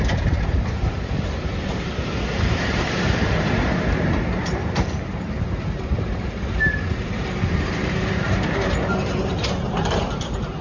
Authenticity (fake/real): fake